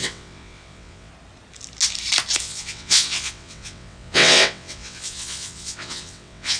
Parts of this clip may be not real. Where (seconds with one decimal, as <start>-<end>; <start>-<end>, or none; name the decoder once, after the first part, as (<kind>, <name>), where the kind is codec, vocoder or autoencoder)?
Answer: 0.0-1.1 (vocoder, WaveNeXt); 2.4-6.6